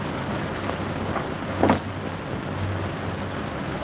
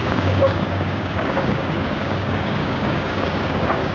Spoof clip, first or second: second